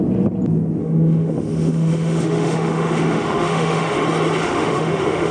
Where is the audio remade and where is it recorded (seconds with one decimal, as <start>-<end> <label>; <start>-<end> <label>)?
0.0-0.8 recorded; 0.8-4.0 remade; 4.0-4.4 recorded; 4.4-5.3 remade